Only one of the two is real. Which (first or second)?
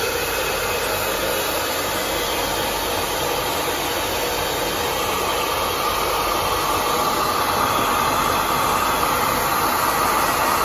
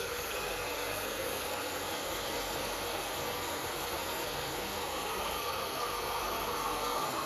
first